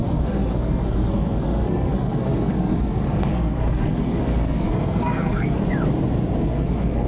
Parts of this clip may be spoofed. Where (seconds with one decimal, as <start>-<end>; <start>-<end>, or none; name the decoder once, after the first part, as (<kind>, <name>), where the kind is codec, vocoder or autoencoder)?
0.0-5.6 (codec, SNAC); 6.4-7.1